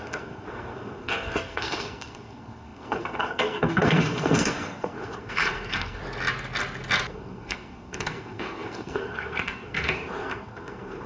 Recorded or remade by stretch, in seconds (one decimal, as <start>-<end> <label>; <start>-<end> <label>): 0.0-6.0 remade; 6.0-7.1 recorded; 7.1-11.1 remade